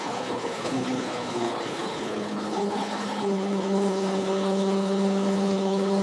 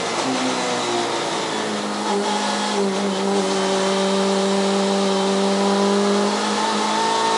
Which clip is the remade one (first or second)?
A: first